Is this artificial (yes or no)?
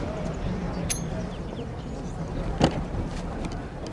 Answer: no